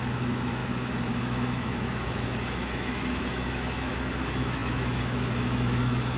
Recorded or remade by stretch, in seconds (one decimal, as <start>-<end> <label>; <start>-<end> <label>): 0.0-6.2 remade